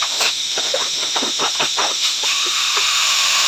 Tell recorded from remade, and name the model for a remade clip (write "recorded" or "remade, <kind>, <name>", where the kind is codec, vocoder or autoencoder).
remade, autoencoder, DAC-VAE